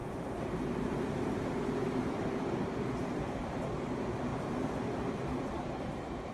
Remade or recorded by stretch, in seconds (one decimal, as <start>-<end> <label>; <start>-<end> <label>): 0.0-4.3 remade; 4.3-5.4 recorded; 5.4-6.3 remade